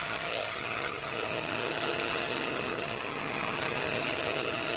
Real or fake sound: fake